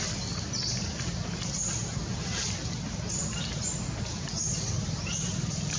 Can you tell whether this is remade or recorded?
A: remade